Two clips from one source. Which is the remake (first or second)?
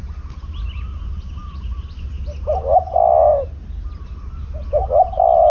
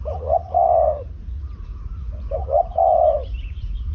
second